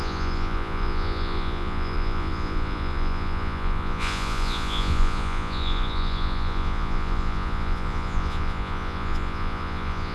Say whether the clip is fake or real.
fake